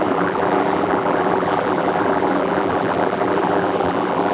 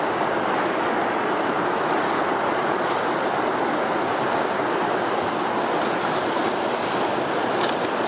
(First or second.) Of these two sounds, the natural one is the second